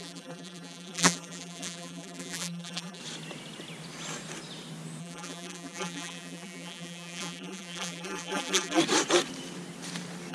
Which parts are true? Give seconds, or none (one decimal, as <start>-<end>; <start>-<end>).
3.0-5.0; 8.8-10.3